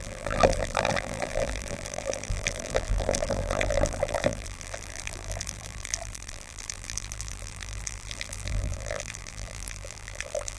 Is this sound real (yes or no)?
no